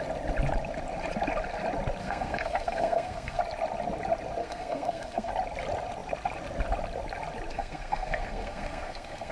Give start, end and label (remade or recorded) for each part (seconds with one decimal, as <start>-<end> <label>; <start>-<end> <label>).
0.0-2.0 recorded; 2.0-3.4 remade; 3.4-4.4 recorded; 4.4-5.3 remade; 5.3-7.5 recorded; 7.5-9.3 remade